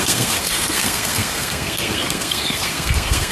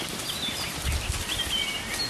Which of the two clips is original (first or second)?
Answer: second